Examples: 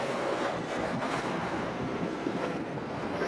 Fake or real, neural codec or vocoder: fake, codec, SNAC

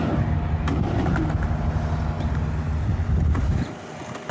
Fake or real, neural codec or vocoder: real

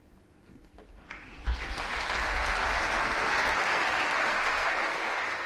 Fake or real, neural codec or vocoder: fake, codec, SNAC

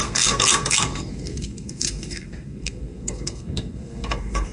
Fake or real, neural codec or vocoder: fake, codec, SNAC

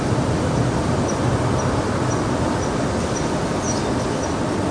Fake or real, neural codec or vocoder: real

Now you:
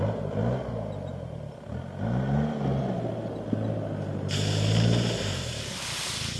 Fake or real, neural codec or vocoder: real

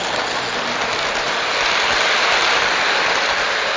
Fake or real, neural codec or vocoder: real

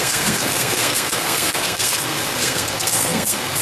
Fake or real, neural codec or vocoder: fake, codec, SNAC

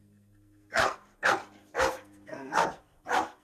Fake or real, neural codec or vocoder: fake, codec, SNAC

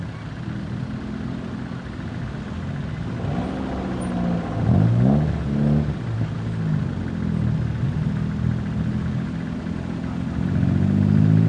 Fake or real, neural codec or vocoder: real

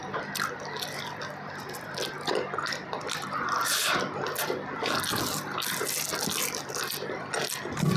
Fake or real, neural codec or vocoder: real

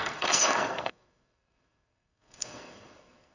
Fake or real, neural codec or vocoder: fake, codec, SNAC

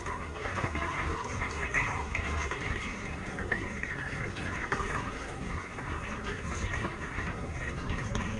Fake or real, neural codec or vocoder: fake, codec, SNAC